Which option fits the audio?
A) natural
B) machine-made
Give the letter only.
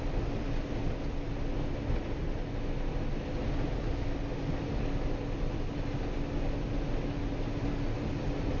A